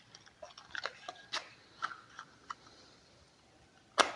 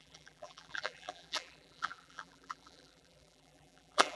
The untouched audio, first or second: first